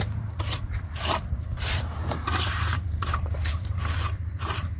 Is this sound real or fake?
fake